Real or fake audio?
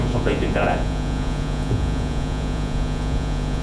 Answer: fake